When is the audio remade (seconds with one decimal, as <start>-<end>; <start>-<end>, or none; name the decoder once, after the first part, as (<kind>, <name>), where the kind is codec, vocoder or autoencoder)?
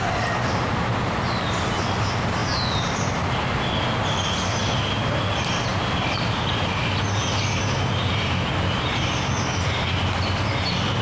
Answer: none